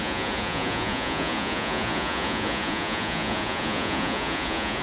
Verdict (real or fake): fake